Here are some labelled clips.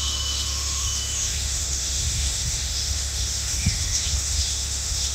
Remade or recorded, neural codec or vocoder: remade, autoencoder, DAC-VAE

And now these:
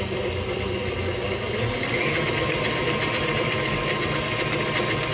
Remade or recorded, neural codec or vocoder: recorded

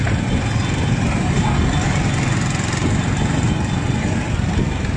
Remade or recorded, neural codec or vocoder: recorded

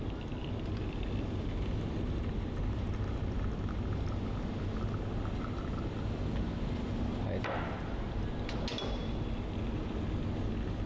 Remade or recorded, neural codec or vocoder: recorded